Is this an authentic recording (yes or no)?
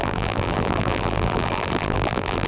no